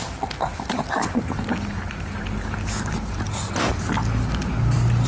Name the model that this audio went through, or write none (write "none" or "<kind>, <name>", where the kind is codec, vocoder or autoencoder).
none